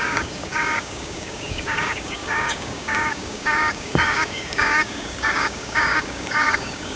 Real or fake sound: fake